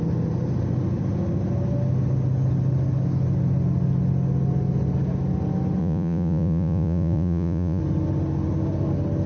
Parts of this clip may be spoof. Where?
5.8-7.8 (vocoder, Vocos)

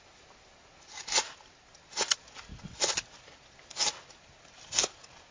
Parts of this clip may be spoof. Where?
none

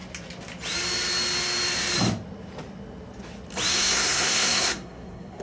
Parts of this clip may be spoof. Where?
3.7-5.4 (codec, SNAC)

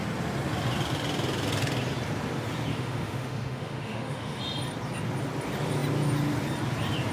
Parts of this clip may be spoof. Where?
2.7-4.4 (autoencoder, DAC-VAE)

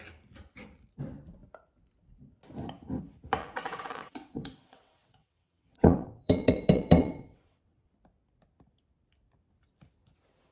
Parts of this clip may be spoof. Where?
3.4-7.9 (vocoder, WaveNeXt)

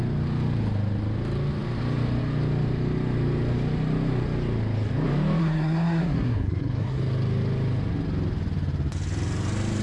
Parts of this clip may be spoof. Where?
5.4-7.0 (codec, SNAC)

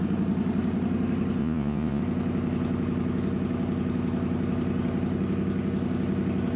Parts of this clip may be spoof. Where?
1.4-2.0 (vocoder, Vocos)